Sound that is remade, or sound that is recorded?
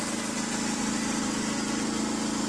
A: remade